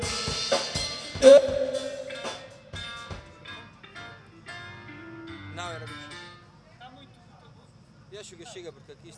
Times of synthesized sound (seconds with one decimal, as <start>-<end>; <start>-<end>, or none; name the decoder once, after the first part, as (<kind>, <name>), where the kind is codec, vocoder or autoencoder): none